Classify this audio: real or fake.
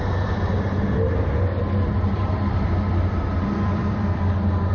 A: fake